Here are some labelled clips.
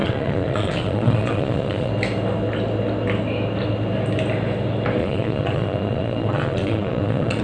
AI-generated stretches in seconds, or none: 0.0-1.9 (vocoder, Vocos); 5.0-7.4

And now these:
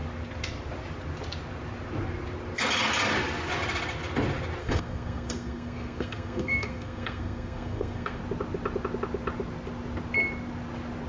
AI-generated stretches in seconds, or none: 4.6-8.2 (codec, SNAC)

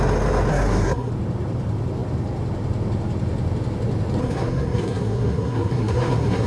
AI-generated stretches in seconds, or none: 0.5-1.1 (codec, SNAC); 4.2-6.5

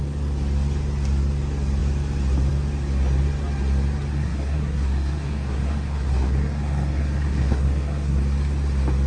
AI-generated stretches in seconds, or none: 4.1-8.2 (codec, SNAC)

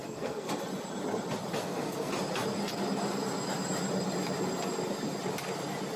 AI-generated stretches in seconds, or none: 0.0-0.5 (codec, SNAC); 1.6-2.1